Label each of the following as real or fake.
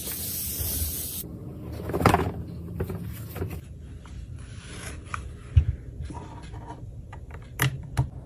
real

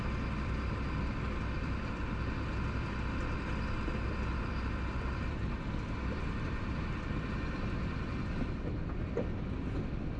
fake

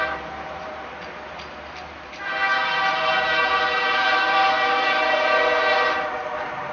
fake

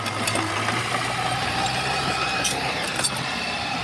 fake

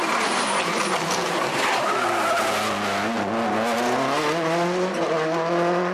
real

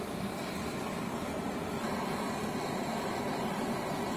real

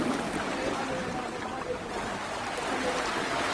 real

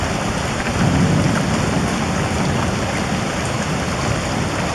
real